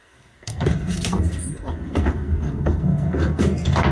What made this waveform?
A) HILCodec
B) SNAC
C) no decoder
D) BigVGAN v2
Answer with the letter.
B